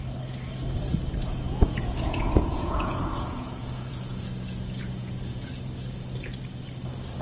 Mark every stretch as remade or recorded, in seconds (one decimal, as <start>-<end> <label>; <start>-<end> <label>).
0.0-1.2 recorded; 1.2-5.5 remade; 5.5-7.2 recorded